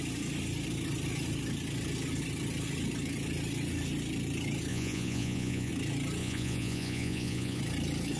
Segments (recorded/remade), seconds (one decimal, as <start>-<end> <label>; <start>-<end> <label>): 0.0-4.7 recorded; 4.7-5.7 remade; 5.7-6.2 recorded; 6.2-7.6 remade; 7.6-8.2 recorded